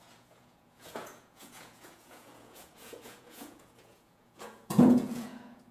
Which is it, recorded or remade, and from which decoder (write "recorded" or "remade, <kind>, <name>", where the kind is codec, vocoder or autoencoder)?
remade, vocoder, Vocos